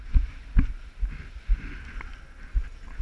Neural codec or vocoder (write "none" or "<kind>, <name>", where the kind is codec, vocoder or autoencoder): none